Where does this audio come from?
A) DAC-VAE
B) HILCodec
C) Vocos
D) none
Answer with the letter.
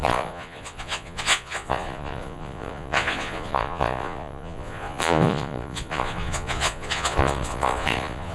C